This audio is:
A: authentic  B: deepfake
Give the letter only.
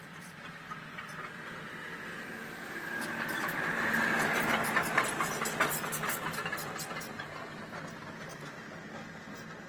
A